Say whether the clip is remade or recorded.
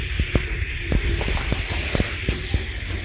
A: remade